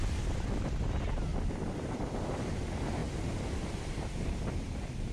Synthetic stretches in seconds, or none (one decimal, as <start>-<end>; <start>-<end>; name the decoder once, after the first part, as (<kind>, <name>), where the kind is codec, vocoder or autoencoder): 1.3-2.2 (vocoder, BigVGAN v2); 3.0-5.1